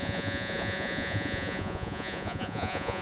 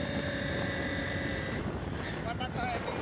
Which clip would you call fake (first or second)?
first